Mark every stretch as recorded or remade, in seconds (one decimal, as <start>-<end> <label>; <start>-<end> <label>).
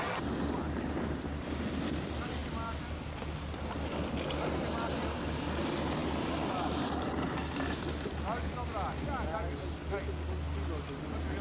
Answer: 0.0-11.4 recorded